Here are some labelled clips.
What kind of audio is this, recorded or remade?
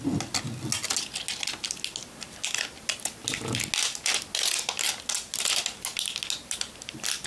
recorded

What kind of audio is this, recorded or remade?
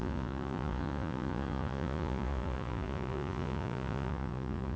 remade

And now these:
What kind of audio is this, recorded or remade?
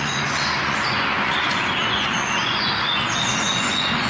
remade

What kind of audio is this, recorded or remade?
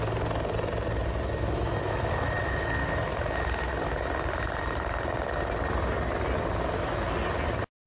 recorded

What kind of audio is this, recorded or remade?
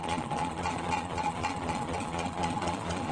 remade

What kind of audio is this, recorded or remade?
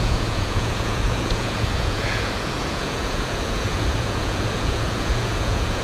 remade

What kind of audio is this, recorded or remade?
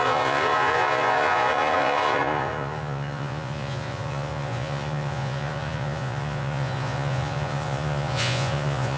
remade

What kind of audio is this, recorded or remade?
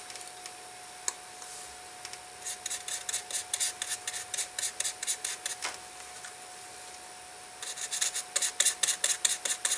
recorded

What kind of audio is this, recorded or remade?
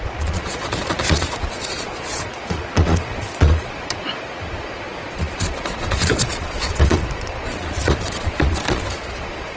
remade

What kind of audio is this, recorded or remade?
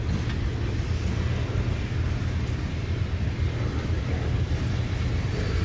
recorded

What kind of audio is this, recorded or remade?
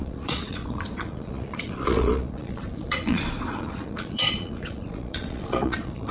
remade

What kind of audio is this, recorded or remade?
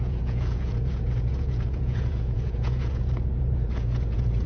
remade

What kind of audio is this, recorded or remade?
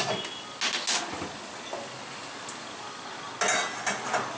recorded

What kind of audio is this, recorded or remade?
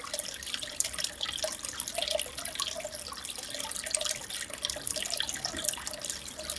recorded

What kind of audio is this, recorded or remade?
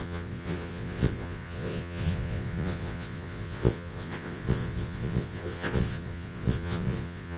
remade